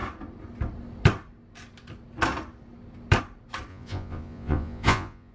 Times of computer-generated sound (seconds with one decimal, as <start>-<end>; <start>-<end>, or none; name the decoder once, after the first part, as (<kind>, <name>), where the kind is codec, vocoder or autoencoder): 3.7-5.3 (vocoder, Vocos)